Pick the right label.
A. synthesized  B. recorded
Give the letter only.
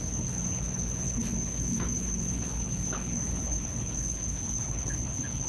A